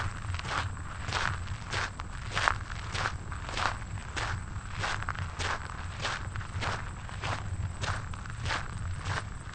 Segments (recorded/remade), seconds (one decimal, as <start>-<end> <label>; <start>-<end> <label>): 0.0-9.5 recorded